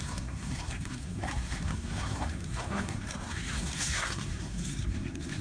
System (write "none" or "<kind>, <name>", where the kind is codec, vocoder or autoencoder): codec, SNAC